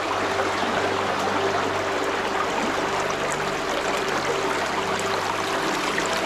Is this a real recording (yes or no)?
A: yes